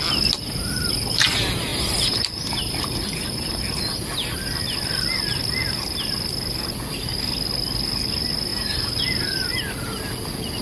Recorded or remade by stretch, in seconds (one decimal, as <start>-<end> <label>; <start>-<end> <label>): 0.0-1.7 recorded; 1.7-3.6 remade; 3.6-8.5 recorded; 8.5-9.0 remade; 9.0-10.6 recorded